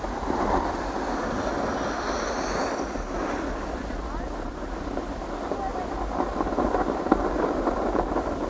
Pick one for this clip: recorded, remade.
recorded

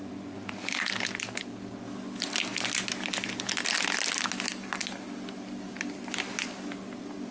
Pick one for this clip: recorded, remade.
recorded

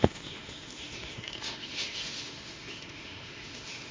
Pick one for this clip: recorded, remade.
remade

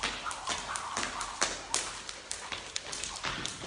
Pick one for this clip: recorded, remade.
recorded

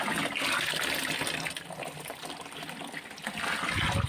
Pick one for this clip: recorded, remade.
recorded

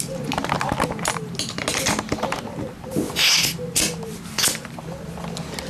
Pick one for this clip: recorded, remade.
recorded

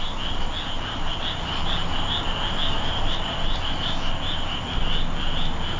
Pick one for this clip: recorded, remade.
recorded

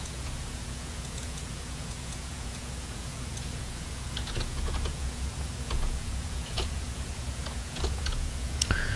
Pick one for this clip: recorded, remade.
remade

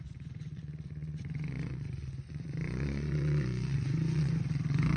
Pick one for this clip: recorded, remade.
remade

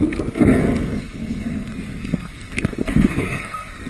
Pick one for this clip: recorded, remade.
remade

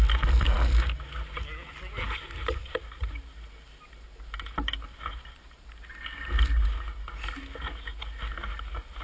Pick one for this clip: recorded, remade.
recorded